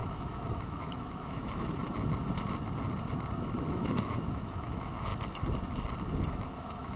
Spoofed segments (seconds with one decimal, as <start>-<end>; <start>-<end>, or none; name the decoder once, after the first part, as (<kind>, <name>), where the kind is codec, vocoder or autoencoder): 0.0-1.8 (autoencoder, DAC-VAE); 3.7-5.1; 6.3-7.0